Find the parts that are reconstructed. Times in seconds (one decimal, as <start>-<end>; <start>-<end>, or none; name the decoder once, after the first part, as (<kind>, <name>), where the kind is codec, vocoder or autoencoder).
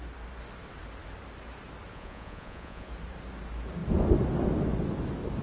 1.9-2.9 (vocoder, Vocos)